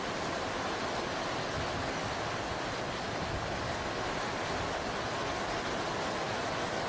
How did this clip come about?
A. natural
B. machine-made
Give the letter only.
A